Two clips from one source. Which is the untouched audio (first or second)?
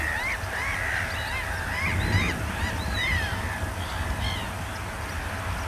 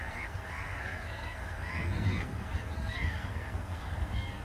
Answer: first